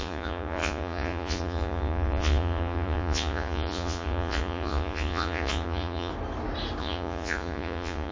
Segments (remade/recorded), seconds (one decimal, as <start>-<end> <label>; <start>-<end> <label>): 0.0-6.1 remade; 6.1-6.8 recorded; 6.8-8.1 remade